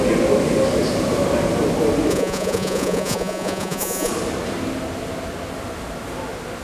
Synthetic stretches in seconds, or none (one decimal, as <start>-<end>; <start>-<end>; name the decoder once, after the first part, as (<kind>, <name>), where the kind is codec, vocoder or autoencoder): 2.1-4.1 (vocoder, Vocos)